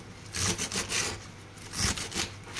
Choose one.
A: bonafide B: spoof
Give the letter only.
A